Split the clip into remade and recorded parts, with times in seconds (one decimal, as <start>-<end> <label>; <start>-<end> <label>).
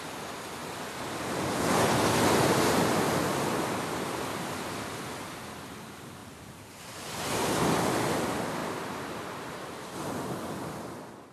0.0-6.2 recorded; 6.2-8.2 remade; 8.2-8.6 recorded; 8.6-9.6 remade; 9.6-11.3 recorded